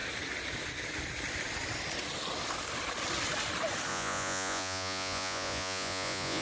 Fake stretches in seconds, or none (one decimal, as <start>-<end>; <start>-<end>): 3.9-6.4